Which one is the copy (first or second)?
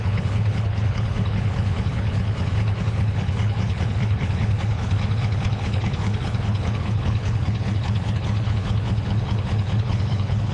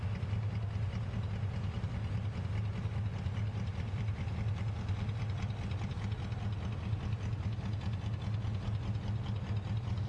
first